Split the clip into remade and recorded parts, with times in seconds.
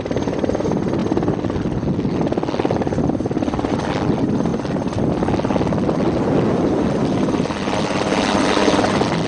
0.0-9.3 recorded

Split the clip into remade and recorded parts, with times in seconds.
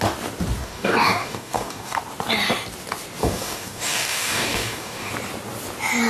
0.0-0.6 recorded; 0.6-2.0 remade; 2.0-3.2 recorded; 3.2-5.1 remade; 5.1-6.1 recorded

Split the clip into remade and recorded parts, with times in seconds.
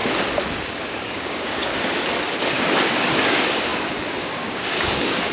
0.0-0.7 recorded; 0.7-1.7 remade; 1.7-2.4 recorded; 2.4-5.3 remade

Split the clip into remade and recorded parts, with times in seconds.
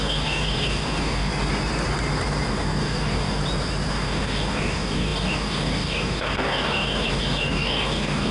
0.0-1.3 remade; 1.3-2.5 recorded; 2.5-3.4 remade; 3.4-3.9 recorded; 3.9-8.3 remade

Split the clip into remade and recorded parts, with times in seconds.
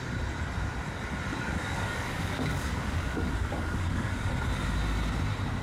0.0-1.3 recorded; 1.3-4.3 remade; 4.3-5.6 recorded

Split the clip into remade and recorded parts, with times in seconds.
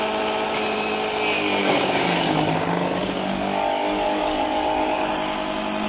0.0-1.6 recorded; 1.6-5.1 remade; 5.1-5.9 recorded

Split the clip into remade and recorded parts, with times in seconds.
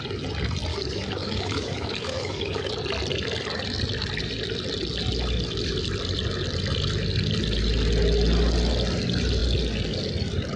0.0-0.7 recorded; 0.7-2.7 remade; 2.7-10.6 recorded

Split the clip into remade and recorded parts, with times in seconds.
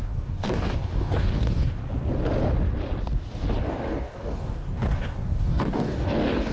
0.0-1.8 remade; 1.8-3.6 recorded; 3.6-6.5 remade